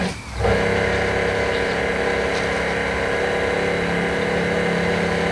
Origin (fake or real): real